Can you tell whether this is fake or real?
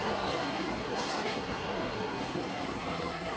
fake